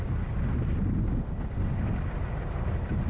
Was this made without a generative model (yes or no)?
yes